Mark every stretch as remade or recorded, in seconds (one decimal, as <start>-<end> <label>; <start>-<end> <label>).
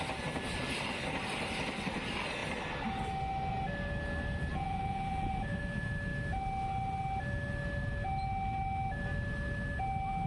0.0-4.5 recorded; 4.5-5.6 remade; 5.6-10.3 recorded